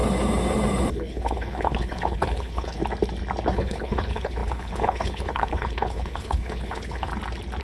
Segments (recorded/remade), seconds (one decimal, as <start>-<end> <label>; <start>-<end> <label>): 0.0-0.9 recorded; 0.9-2.8 remade; 2.8-3.5 recorded; 3.5-7.1 remade; 7.1-7.6 recorded